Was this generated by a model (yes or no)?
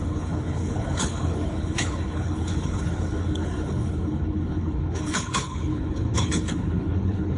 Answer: yes